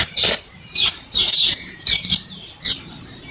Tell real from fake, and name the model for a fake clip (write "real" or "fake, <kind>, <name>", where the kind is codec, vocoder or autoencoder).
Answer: fake, vocoder, BigVGAN v2